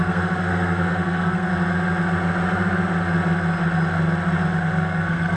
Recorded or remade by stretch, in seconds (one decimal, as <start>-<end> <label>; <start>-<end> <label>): 0.0-1.5 remade; 1.5-4.7 recorded; 4.7-5.4 remade

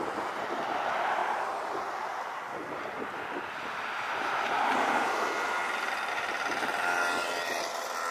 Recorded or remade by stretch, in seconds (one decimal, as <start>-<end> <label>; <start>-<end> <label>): 0.0-1.2 recorded; 1.2-6.1 remade; 6.1-8.1 recorded

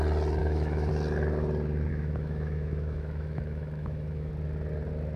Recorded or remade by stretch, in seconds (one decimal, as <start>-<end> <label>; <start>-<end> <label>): 0.0-0.4 recorded; 0.4-0.9 remade; 0.9-1.9 recorded; 1.9-4.3 remade; 4.3-5.2 recorded

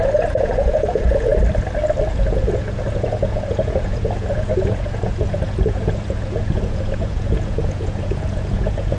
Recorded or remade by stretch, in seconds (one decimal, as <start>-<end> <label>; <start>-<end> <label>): 0.0-1.3 remade; 1.3-2.1 recorded; 2.1-9.0 remade

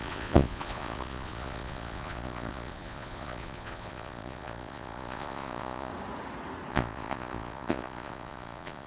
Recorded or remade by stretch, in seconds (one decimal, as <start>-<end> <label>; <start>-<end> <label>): 0.0-5.9 remade; 5.9-6.7 recorded; 6.7-8.9 remade